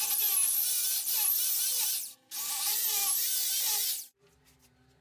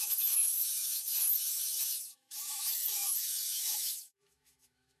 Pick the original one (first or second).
first